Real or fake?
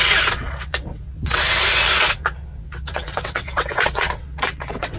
fake